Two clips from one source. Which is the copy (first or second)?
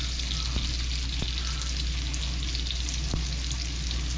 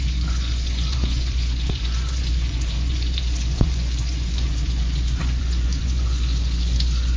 second